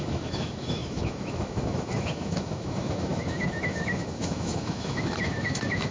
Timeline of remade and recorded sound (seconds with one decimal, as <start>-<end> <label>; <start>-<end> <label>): 0.0-5.9 remade